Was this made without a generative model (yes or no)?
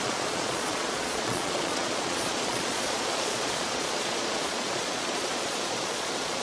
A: no